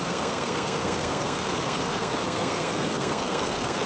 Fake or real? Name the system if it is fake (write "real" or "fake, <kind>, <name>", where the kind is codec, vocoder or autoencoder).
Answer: fake, codec, SNAC